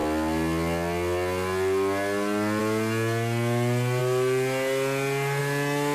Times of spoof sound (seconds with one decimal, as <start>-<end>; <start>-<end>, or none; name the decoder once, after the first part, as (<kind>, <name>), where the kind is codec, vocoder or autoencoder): none